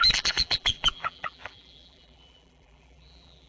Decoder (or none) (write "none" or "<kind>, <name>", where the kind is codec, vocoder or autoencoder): vocoder, BigVGAN v2